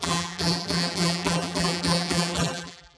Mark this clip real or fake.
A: fake